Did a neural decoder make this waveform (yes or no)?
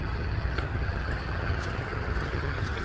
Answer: yes